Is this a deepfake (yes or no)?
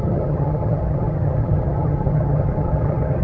yes